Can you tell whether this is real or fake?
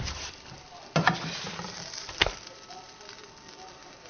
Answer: fake